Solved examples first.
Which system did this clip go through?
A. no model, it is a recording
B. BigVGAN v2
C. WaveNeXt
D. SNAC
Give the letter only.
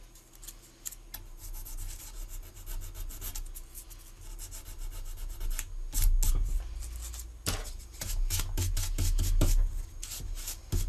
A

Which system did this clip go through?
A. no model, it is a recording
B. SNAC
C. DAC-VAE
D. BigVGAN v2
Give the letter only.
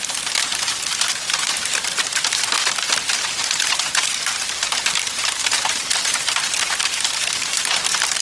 D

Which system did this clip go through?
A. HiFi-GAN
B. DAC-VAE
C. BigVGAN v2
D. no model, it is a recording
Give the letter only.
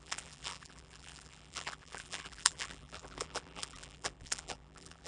C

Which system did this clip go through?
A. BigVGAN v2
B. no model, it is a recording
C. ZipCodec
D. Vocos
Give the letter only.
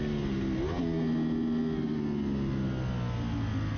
B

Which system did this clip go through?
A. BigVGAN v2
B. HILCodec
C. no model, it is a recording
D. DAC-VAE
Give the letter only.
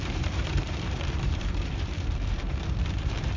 A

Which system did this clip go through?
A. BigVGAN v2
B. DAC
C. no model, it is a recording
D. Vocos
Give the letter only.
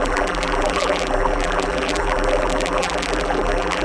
A